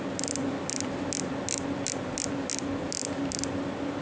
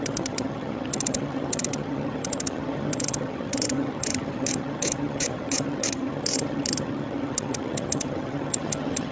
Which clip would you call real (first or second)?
first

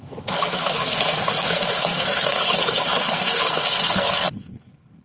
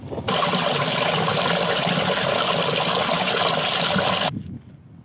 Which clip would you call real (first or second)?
second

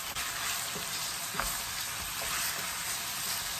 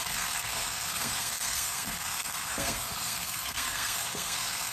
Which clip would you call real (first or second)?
first